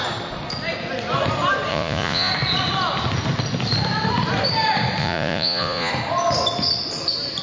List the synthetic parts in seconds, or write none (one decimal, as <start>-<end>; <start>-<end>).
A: 1.7-2.3; 5.0-5.9